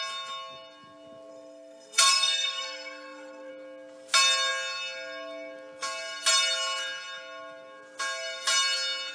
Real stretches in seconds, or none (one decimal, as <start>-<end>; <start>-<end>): 0.0-1.3; 3.5-9.1